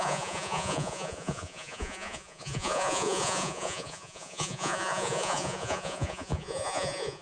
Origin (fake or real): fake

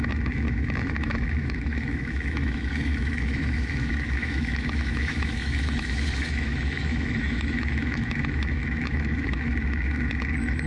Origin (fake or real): fake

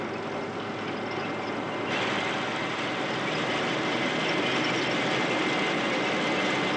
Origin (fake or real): real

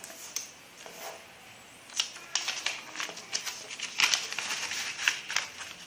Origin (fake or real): real